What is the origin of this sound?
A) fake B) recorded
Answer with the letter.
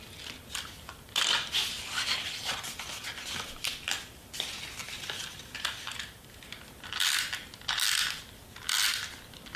B